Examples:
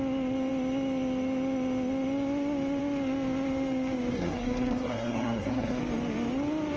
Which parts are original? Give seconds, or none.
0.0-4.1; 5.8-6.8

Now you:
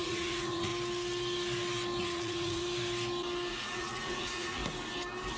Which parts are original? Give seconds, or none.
0.7-2.0; 2.6-3.5; 4.6-5.4

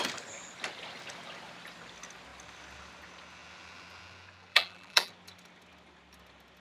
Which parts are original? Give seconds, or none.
0.0-4.5; 5.1-6.6

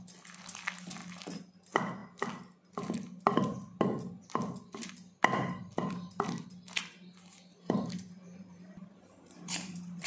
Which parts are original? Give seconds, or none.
0.0-7.5

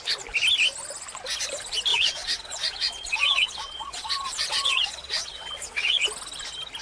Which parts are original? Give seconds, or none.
0.0-1.9; 6.0-6.8

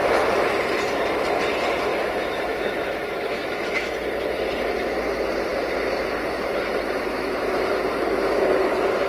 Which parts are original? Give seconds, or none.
0.0-1.9; 3.9-7.2; 7.8-9.1

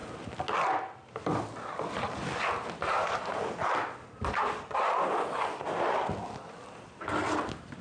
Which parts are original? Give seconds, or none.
0.0-7.8